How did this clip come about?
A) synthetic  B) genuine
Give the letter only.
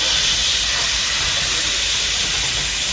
B